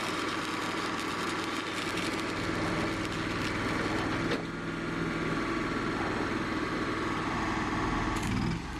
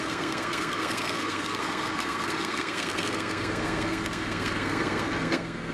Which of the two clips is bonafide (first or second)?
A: first